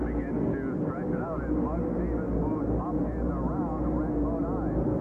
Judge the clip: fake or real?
real